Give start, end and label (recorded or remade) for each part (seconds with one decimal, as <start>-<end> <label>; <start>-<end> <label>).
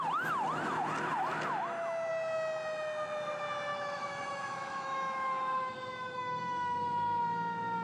0.0-3.7 recorded; 3.7-7.2 remade; 7.2-7.8 recorded